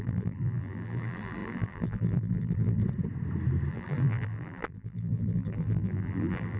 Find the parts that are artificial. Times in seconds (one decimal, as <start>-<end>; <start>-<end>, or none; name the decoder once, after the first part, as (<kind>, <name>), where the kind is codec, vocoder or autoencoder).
0.0-2.8 (vocoder, BigVGAN v2); 3.7-6.6